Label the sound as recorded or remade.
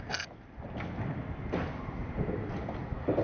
recorded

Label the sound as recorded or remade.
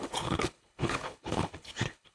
remade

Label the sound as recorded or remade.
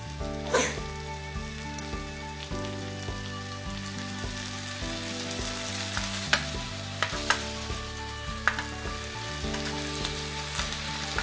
recorded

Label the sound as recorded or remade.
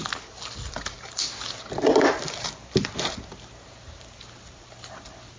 recorded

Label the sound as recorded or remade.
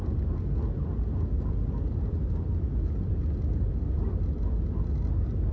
recorded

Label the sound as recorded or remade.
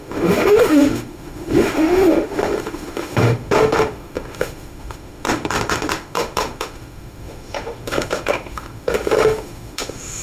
remade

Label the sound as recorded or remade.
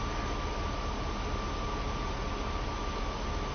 recorded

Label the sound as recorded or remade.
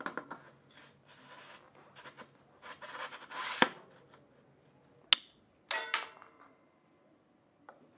recorded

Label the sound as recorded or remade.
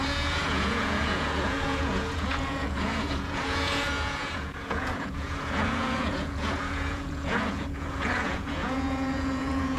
remade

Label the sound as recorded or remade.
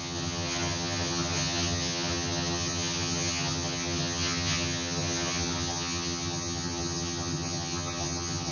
remade